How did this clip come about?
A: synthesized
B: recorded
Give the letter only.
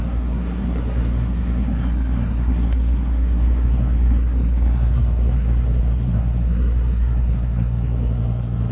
A